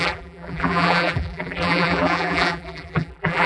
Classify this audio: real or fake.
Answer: fake